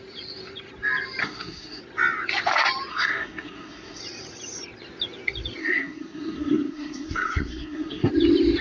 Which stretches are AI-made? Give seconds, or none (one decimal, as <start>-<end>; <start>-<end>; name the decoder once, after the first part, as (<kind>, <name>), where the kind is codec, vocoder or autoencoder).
1.2-1.8 (codec, SNAC); 2.9-4.0; 5.6-8.1